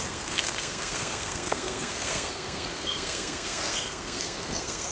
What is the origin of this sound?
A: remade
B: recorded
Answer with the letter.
A